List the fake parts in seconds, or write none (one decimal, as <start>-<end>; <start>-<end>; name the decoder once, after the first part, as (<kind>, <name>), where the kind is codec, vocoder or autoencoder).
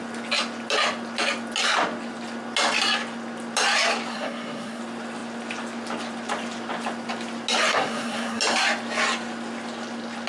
4.1-4.8 (codec, SNAC); 7.7-8.4